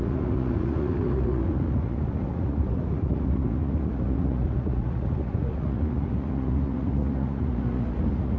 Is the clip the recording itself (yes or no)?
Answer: no